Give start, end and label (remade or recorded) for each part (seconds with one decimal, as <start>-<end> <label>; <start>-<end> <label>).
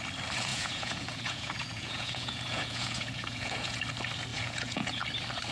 0.0-0.5 recorded; 0.5-3.8 remade; 3.8-4.3 recorded; 4.3-5.0 remade; 5.0-5.5 recorded